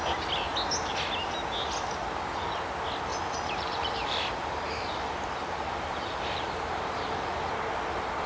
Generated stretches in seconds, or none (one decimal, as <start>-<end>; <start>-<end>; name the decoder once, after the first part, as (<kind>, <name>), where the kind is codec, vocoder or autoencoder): 3.1-7.5 (vocoder, BigVGAN v2)